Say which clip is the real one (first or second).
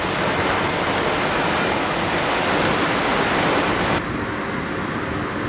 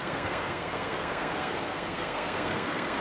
first